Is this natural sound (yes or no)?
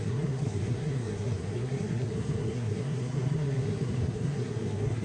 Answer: no